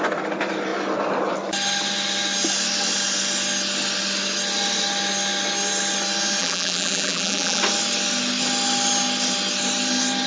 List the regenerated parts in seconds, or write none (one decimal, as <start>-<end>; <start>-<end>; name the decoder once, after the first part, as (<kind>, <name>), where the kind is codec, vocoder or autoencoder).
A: 6.4-7.6 (vocoder, BigVGAN v2)